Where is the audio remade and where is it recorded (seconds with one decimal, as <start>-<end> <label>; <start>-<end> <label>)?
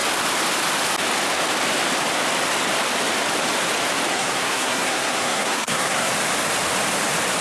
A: 0.0-4.1 recorded; 4.1-6.1 remade; 6.1-7.4 recorded